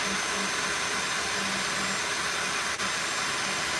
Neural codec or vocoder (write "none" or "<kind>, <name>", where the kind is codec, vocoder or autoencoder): none